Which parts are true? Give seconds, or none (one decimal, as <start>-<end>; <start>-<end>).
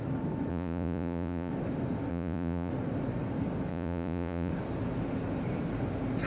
0.0-0.5; 1.5-2.1; 2.7-3.7; 4.5-6.3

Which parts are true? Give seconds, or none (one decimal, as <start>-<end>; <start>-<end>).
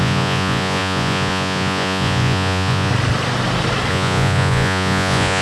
2.9-3.9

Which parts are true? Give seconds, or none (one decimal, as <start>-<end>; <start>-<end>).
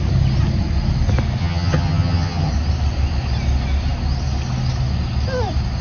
0.0-1.4; 2.5-5.8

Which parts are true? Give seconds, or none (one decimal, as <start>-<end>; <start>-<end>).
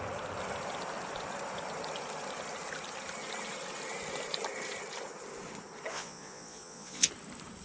0.0-5.9; 7.1-7.6